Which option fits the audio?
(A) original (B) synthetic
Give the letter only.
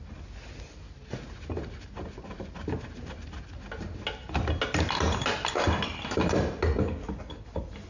A